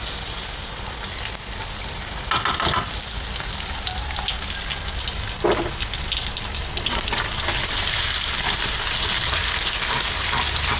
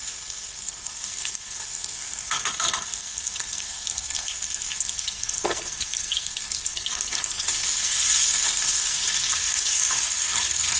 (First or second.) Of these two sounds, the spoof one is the second